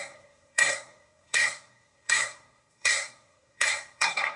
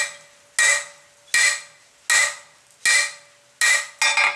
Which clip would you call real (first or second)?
second